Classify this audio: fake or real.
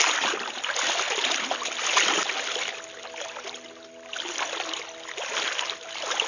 real